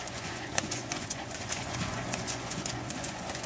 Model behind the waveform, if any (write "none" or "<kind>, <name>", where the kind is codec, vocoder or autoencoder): vocoder, Vocos